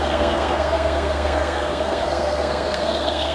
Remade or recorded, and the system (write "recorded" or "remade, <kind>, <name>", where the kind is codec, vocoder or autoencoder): remade, codec, SNAC